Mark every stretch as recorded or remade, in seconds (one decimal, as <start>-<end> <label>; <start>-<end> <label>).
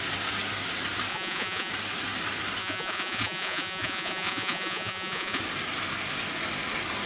0.0-1.1 recorded; 1.1-1.7 remade; 1.7-2.6 recorded; 2.6-5.4 remade; 5.4-7.1 recorded